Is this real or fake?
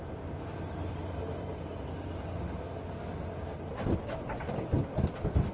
real